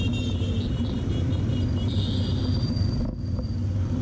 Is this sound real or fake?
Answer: real